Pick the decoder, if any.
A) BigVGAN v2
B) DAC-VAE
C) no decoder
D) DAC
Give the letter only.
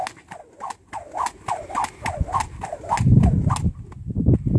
C